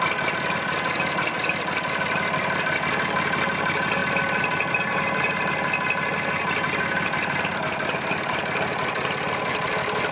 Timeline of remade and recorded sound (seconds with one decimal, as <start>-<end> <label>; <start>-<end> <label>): 0.0-10.1 recorded